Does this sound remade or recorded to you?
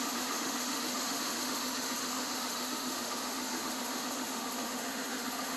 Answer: remade